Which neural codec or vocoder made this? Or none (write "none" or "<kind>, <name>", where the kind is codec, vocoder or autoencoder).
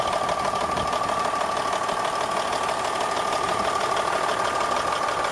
vocoder, BigVGAN v2